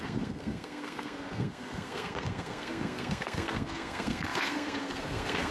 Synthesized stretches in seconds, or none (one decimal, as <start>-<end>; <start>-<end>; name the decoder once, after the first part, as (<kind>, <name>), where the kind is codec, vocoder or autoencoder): 0.0-5.5 (codec, SNAC)